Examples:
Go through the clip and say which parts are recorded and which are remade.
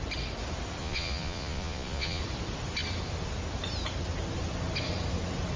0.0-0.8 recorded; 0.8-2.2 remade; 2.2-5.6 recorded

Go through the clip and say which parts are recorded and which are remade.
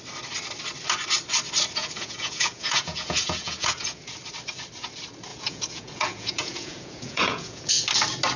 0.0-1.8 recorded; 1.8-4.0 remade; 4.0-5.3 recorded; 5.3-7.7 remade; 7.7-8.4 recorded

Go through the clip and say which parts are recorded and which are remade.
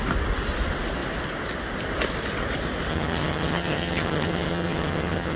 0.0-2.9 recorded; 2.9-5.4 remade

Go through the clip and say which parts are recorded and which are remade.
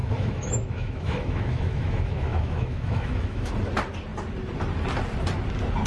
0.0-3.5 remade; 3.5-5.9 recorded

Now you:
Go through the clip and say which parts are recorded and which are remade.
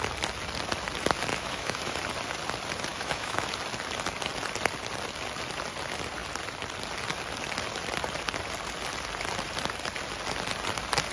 0.0-1.3 recorded; 1.3-2.0 remade; 2.0-2.9 recorded; 2.9-3.5 remade; 3.5-11.1 recorded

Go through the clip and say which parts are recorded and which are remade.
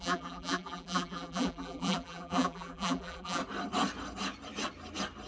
0.0-3.4 remade; 3.4-5.3 recorded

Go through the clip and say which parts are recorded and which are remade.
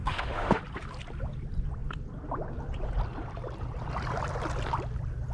0.0-0.6 remade; 0.6-5.3 recorded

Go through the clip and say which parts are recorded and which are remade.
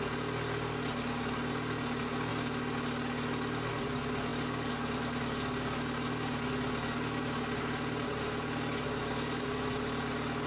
0.0-10.5 recorded